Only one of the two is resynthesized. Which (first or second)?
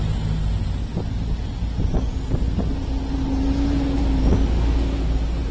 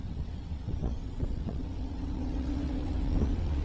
second